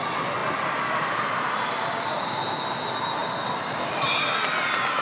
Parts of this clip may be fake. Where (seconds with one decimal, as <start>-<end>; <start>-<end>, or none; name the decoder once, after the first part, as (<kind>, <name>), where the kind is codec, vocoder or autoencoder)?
none